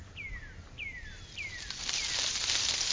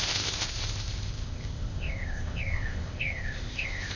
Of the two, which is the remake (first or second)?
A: second